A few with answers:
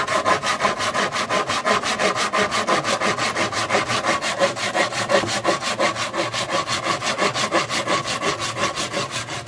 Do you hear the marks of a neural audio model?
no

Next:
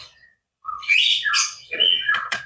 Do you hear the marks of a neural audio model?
yes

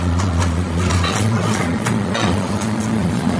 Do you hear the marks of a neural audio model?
yes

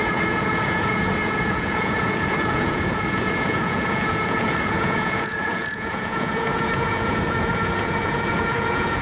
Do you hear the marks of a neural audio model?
yes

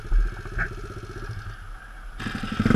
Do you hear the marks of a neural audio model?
no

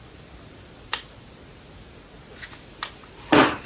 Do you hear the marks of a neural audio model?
no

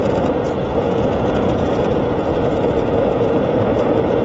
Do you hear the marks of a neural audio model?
yes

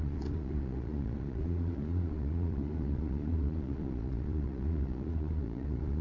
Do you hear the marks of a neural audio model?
yes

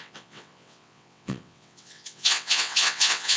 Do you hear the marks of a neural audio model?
yes